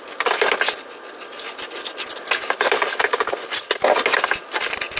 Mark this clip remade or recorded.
recorded